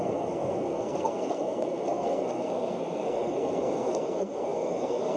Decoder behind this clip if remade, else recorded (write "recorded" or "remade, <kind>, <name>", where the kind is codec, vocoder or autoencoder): remade, codec, SNAC